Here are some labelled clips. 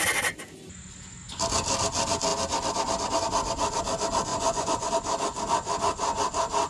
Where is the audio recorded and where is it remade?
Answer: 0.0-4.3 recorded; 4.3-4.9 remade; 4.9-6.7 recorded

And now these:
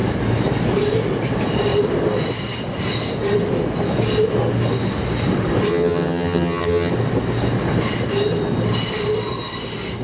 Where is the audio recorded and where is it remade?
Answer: 0.0-5.7 recorded; 5.7-6.9 remade; 6.9-10.0 recorded